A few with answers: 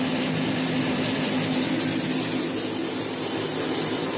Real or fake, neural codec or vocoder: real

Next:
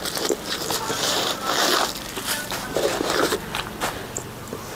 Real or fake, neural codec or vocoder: fake, vocoder, BigVGAN v2